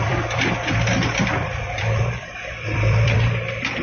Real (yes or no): no